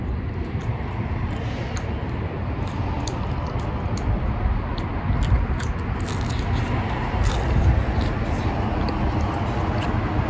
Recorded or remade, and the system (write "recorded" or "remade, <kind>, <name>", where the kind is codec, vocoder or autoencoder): recorded